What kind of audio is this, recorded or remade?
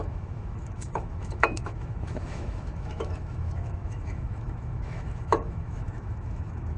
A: remade